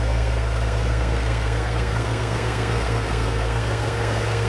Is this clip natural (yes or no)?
no